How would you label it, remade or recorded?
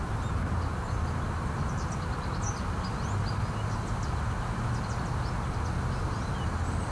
recorded